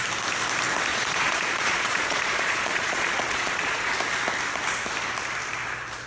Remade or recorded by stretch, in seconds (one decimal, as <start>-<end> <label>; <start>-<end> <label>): 0.0-0.9 recorded; 0.9-3.9 remade; 3.9-6.1 recorded

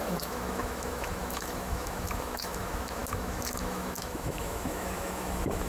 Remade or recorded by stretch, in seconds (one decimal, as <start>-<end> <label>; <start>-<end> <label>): 0.0-5.7 remade